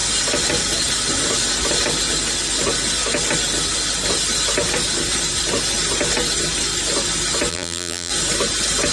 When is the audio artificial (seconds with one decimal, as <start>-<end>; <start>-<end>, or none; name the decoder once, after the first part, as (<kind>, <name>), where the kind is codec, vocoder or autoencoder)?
7.5-8.1 (vocoder, BigVGAN v2)